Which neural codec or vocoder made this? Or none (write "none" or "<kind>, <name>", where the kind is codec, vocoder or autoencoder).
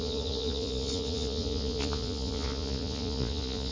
vocoder, Vocos